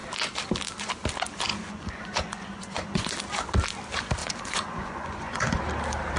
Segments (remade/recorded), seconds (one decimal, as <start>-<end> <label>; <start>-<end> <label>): 0.0-1.5 recorded; 1.5-3.1 remade; 3.1-4.2 recorded; 4.2-5.6 remade; 5.6-6.2 recorded